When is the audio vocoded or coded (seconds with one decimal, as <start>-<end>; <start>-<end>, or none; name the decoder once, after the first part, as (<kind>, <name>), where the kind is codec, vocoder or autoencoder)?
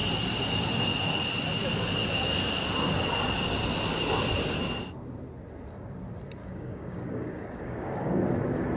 2.0-2.5 (codec, DAC); 6.4-8.2